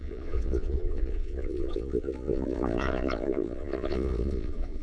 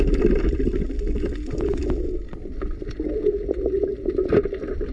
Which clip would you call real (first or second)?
second